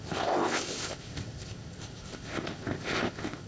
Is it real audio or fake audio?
fake